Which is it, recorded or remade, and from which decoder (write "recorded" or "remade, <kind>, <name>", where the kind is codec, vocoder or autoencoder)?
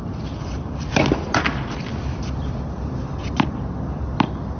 recorded